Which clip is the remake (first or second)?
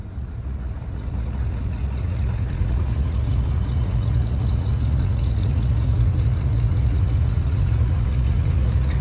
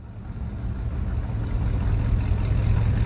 first